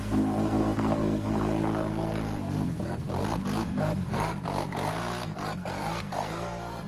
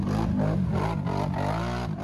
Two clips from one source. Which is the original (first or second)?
second